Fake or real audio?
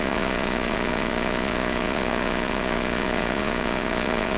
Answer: fake